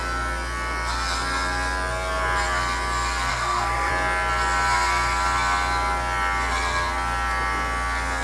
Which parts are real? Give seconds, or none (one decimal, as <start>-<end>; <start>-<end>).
0.0-3.3; 3.9-8.2